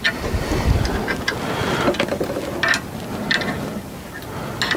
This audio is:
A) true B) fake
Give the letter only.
A